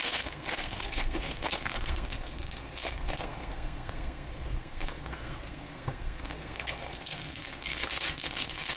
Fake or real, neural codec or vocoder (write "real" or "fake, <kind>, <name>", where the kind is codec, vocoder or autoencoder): fake, codec, SNAC